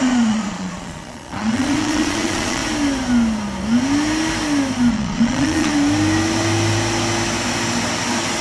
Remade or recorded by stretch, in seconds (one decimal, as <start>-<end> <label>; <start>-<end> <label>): 0.0-2.6 remade; 2.6-4.9 recorded; 4.9-5.7 remade; 5.7-8.4 recorded